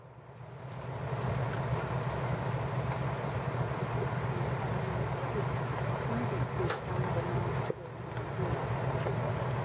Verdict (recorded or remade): recorded